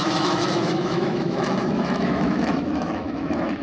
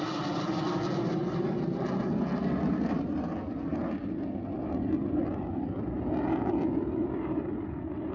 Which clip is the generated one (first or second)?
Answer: first